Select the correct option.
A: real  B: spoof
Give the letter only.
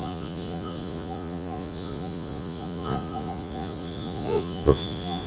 B